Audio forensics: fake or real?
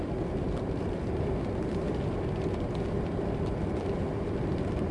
real